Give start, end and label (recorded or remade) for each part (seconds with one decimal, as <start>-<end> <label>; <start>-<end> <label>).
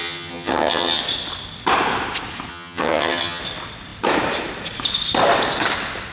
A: 0.0-1.0 remade; 1.0-2.5 recorded; 2.5-3.4 remade; 3.4-6.1 recorded